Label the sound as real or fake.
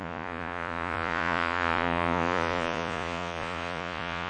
fake